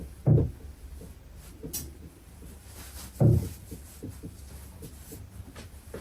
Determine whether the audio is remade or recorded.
recorded